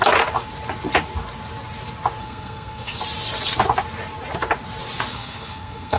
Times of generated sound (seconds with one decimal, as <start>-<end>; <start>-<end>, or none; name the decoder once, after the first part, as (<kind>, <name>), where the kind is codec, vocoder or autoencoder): 2.2-3.0 (codec, SNAC); 5.1-6.0